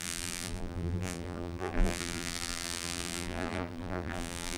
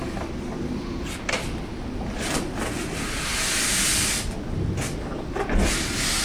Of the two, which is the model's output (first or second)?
first